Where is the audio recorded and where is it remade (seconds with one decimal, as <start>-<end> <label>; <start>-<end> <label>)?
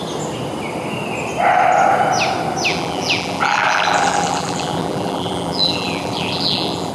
0.0-2.7 recorded; 2.7-6.9 remade